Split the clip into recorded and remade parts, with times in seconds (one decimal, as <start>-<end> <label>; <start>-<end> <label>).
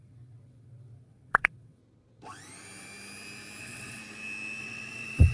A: 0.0-1.8 remade; 1.8-3.6 recorded; 3.6-4.0 remade; 4.0-4.6 recorded; 4.6-5.3 remade